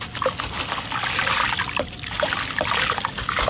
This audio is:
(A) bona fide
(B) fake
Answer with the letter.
A